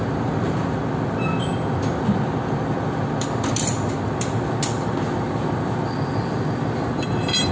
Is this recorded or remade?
recorded